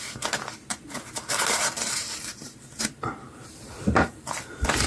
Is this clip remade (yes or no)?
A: yes